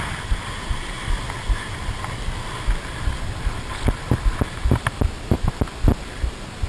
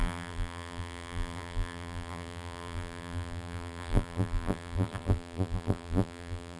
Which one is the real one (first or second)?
first